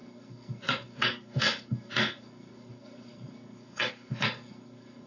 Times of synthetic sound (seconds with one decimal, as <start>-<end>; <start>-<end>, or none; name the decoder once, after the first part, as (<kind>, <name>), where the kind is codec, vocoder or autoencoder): 0.0-5.1 (codec, SNAC)

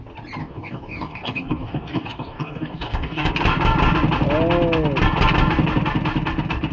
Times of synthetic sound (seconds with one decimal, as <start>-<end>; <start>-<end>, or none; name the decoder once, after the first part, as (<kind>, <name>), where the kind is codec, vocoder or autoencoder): 0.4-3.3 (codec, DAC)

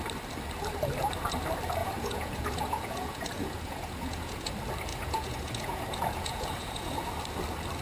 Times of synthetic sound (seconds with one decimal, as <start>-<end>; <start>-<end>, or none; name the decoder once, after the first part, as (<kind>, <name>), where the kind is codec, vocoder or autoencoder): 1.8-4.5 (vocoder, Vocos); 4.9-7.1